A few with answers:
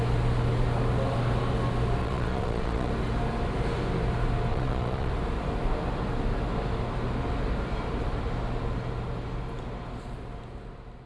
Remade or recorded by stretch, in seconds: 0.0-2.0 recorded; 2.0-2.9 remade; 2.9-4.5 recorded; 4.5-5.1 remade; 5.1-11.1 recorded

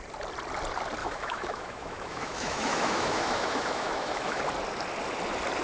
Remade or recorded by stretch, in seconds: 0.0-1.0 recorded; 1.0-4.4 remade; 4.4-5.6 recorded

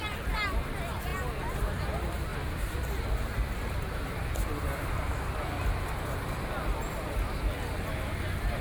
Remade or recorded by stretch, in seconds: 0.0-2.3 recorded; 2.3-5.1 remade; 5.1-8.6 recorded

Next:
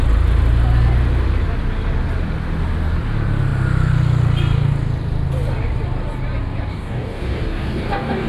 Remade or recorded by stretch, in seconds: 0.0-6.7 recorded; 6.7-8.3 remade

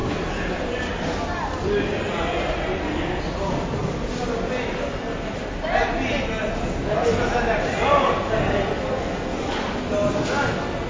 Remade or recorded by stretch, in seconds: 0.0-10.9 recorded

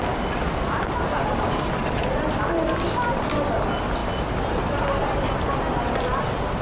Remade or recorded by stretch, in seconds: 0.0-6.6 recorded

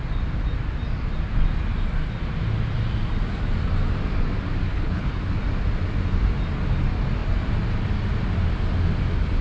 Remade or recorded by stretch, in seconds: 0.0-4.7 recorded; 4.7-5.2 remade; 5.2-9.4 recorded